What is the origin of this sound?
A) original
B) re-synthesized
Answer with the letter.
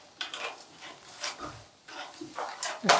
A